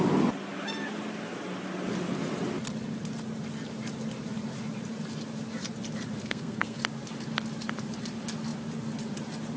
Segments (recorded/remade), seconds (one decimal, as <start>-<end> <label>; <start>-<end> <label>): 0.0-6.2 recorded; 6.2-6.8 remade; 6.8-9.6 recorded